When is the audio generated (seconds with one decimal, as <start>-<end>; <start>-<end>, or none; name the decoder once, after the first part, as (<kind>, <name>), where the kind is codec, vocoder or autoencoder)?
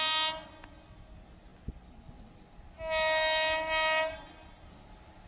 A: none